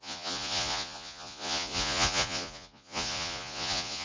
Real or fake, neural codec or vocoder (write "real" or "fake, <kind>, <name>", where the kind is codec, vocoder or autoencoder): fake, vocoder, Vocos